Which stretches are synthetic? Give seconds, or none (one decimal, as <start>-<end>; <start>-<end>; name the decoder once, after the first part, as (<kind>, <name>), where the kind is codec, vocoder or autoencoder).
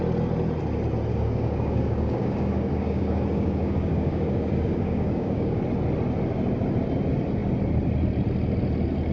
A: 1.1-5.6 (codec, DAC)